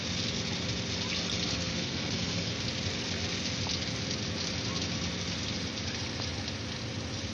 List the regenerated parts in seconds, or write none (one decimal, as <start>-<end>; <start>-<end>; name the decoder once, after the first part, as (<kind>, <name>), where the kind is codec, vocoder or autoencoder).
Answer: 1.5-2.5 (codec, SNAC)